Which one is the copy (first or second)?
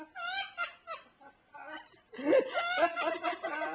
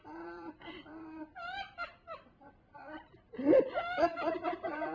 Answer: second